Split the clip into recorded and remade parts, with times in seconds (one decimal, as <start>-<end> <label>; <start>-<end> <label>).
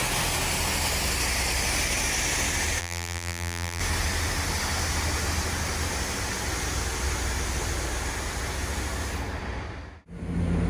0.0-2.8 recorded; 2.8-3.8 remade; 3.8-10.7 recorded